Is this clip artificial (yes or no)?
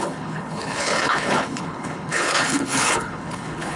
yes